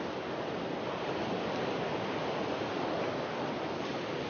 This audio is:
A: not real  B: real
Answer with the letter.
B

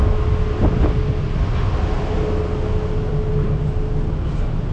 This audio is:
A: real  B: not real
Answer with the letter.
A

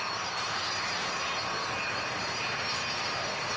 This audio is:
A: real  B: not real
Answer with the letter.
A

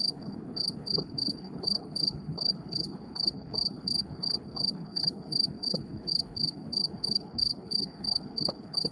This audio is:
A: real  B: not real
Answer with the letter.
B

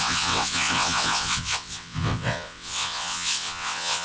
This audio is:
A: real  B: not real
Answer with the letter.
B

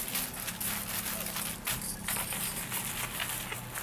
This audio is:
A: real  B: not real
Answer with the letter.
A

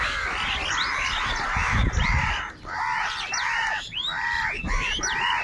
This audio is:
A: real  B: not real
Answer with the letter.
B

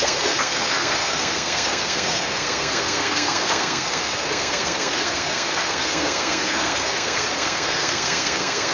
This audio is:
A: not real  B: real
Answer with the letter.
A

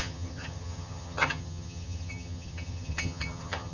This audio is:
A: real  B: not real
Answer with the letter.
B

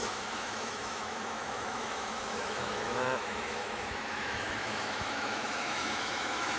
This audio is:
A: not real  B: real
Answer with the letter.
A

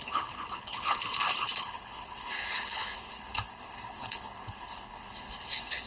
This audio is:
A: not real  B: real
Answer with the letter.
A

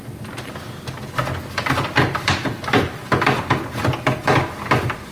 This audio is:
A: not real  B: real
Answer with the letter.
A